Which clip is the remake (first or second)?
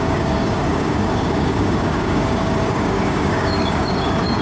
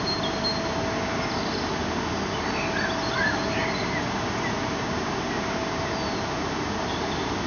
first